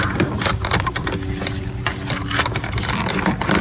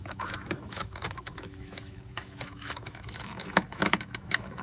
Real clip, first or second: first